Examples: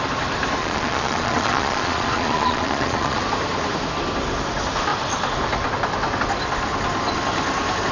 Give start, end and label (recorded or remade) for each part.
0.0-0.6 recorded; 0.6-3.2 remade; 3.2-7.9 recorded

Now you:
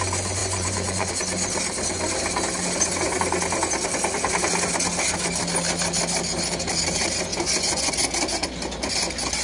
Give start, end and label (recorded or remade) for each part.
0.0-0.4 recorded; 0.4-1.1 remade; 1.1-7.3 recorded; 7.3-7.9 remade; 7.9-9.4 recorded

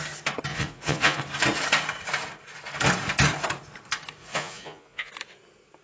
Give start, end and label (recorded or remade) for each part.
0.0-0.5 recorded; 0.5-1.2 remade; 1.2-4.2 recorded; 4.2-5.1 remade; 5.1-5.8 recorded

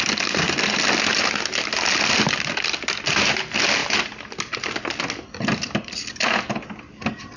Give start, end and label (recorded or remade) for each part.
0.0-7.4 recorded

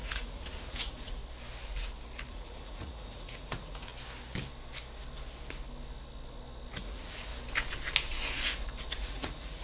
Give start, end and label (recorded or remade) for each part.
0.0-1.2 remade; 1.2-2.3 recorded; 2.3-3.9 remade; 3.9-6.8 recorded; 6.8-7.3 remade; 7.3-9.0 recorded; 9.0-9.6 remade

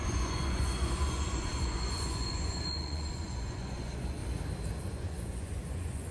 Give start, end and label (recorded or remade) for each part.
0.0-4.2 remade; 4.2-4.8 recorded; 4.8-6.1 remade

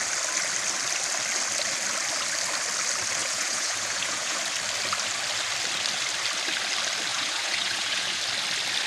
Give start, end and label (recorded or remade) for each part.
0.0-3.2 recorded; 3.2-4.4 remade; 4.4-7.1 recorded; 7.1-8.2 remade; 8.2-8.9 recorded